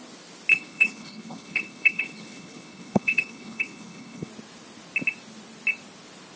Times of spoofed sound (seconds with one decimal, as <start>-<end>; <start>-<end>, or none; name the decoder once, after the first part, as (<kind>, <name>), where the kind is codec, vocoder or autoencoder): 0.5-4.3 (codec, HILCodec)